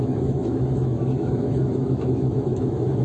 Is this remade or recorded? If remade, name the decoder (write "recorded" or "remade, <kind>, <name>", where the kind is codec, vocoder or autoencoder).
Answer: remade, autoencoder, DAC-VAE